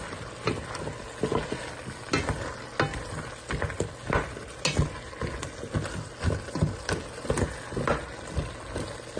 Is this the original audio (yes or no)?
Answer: yes